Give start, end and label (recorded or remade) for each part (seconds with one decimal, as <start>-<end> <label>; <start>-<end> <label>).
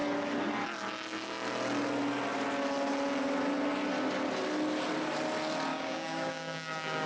0.0-5.7 recorded; 5.7-7.1 remade